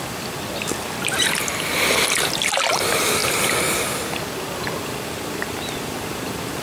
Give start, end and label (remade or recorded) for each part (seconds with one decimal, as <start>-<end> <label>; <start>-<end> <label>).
0.0-3.2 remade; 3.2-4.8 recorded; 4.8-6.6 remade